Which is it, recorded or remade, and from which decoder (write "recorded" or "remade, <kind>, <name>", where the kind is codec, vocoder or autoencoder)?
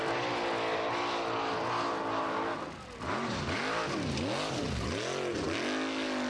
recorded